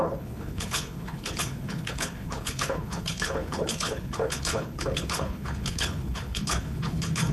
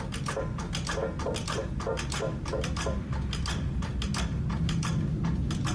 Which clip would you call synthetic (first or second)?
first